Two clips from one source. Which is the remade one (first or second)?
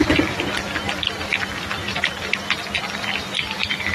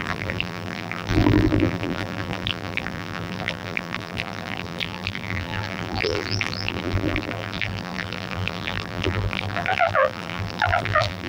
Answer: second